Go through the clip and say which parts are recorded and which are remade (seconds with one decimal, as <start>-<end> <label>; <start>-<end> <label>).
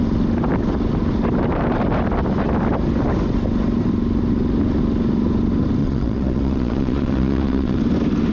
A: 0.0-5.8 recorded; 5.8-7.8 remade; 7.8-8.3 recorded